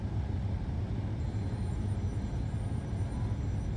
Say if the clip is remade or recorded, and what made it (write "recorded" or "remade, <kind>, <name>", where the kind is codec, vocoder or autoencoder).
recorded